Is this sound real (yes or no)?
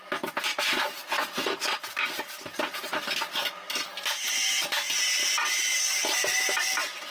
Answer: yes